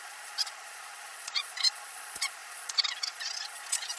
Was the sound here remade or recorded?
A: remade